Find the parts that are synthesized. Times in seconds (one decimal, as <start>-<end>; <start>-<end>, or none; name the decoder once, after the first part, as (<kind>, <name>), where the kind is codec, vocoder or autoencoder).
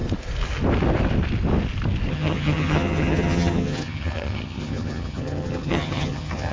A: 2.1-6.5 (vocoder, HiFi-GAN)